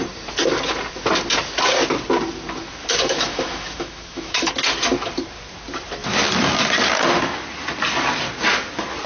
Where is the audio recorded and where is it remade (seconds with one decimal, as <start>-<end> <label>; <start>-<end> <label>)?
0.0-2.8 recorded; 2.8-4.5 remade; 4.5-9.1 recorded